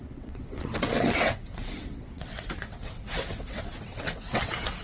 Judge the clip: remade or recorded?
remade